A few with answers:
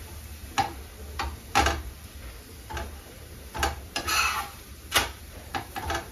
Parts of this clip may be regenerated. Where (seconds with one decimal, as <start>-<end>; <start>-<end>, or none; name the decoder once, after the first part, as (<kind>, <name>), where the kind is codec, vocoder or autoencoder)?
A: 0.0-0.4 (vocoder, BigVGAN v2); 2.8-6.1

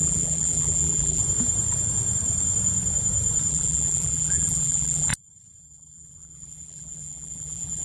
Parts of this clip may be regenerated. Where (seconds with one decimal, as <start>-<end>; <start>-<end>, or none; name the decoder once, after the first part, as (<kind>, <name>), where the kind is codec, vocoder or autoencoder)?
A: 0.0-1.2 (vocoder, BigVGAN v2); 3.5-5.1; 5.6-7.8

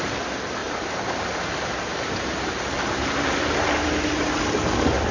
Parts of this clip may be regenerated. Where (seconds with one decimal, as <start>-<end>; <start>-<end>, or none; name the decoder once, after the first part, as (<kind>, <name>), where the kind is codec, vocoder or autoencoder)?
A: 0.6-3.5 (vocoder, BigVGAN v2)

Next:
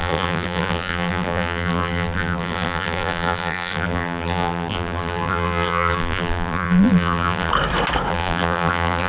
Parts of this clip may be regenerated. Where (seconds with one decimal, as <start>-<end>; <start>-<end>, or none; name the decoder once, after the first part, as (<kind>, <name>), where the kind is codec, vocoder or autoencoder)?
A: 0.0-7.5 (vocoder, BigVGAN v2); 8.1-9.1